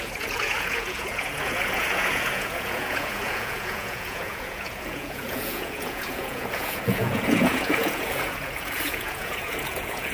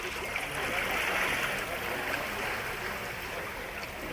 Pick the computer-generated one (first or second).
first